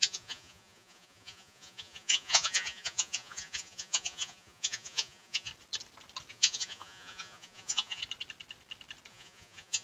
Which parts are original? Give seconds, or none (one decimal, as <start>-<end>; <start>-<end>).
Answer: 5.5-6.3; 8.0-9.1